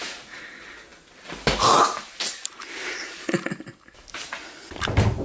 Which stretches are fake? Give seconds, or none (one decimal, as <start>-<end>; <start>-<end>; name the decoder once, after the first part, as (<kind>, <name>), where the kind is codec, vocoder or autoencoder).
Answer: none